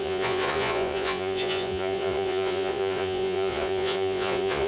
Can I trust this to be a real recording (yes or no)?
no